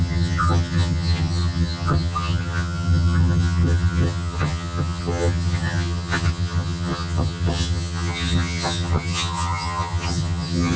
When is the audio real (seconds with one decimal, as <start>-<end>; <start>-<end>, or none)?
none